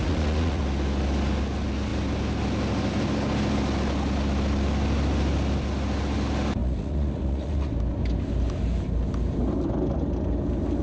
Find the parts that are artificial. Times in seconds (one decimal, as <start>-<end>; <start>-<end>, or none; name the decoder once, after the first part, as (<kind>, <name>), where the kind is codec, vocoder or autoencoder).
0.0-0.6 (vocoder, Vocos); 6.6-7.7

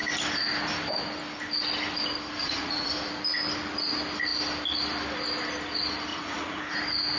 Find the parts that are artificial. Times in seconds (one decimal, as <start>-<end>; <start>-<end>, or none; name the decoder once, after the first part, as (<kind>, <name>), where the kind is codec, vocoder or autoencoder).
2.4-2.9 (vocoder, Vocos); 6.1-6.6

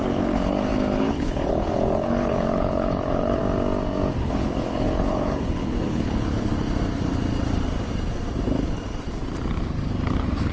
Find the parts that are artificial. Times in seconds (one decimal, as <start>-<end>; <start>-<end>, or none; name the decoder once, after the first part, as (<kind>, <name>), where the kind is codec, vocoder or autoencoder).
0.0-3.4 (codec, HILCodec); 4.2-6.5

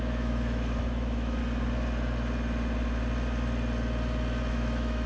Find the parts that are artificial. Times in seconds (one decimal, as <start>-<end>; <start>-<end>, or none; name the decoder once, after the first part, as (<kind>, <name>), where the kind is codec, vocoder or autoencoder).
0.0-1.4 (autoencoder, DAC-VAE); 4.5-5.1

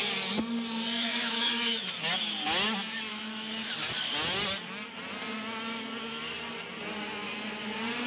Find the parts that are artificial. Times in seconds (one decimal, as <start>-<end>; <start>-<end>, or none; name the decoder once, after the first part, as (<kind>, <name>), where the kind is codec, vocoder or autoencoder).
1.0-1.9 (autoencoder, DAC-VAE); 3.1-3.7